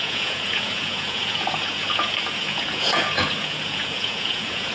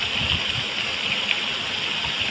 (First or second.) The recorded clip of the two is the second